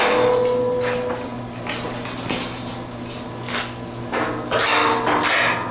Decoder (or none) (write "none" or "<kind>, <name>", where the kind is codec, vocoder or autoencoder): none